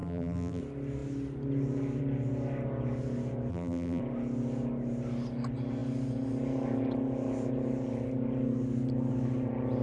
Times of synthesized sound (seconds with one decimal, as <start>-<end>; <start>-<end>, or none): 0.0-0.6; 3.5-4.0